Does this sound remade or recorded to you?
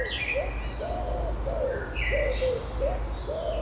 recorded